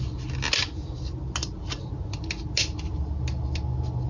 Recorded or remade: recorded